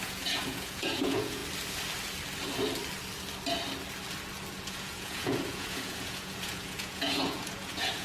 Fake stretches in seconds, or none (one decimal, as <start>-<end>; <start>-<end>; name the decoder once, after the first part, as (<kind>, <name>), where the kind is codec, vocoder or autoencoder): 0.0-1.4 (vocoder, Vocos); 4.5-8.0